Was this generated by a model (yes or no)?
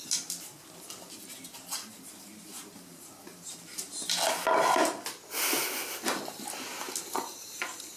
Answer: no